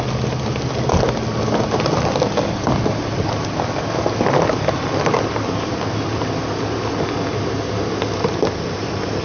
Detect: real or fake real